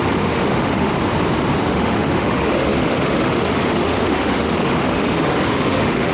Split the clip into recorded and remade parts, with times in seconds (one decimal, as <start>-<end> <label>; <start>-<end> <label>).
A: 0.0-0.9 remade; 0.9-1.6 recorded; 1.6-6.1 remade